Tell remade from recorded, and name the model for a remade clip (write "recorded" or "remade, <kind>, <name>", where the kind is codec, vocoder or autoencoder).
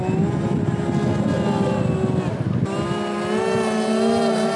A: recorded